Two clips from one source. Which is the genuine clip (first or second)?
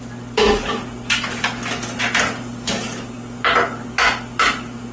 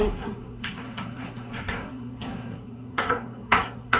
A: first